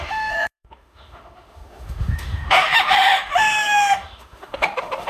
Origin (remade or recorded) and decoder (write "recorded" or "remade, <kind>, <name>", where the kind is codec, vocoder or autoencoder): remade, autoencoder, DAC-VAE